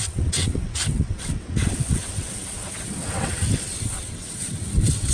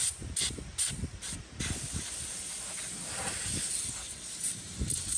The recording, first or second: second